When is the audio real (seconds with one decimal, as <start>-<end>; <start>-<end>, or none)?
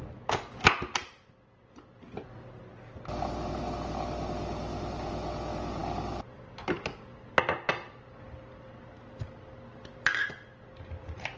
0.0-11.4